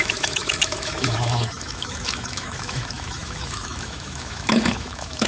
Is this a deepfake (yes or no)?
yes